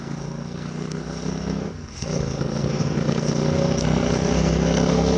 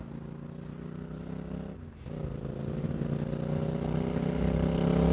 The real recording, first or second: second